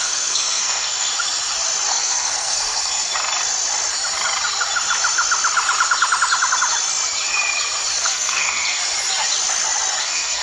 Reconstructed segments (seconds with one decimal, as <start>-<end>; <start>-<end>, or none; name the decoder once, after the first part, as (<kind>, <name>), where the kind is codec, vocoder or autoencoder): 0.0-1.1 (codec, SNAC); 1.9-3.1; 8.0-8.8; 10.0-10.4